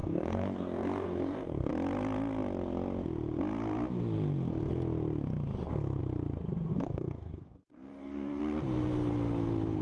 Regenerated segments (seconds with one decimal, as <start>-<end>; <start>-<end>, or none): 0.0-1.7; 6.7-8.4